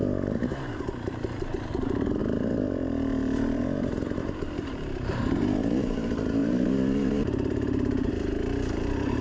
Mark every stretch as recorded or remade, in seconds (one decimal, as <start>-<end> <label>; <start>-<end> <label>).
0.0-9.2 remade